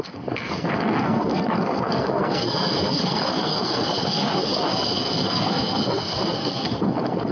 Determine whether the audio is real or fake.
fake